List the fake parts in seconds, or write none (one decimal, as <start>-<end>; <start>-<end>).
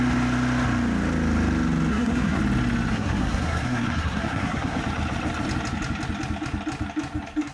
1.9-2.4; 2.9-4.8